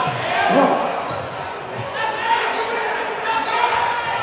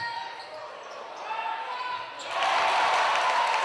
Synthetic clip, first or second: first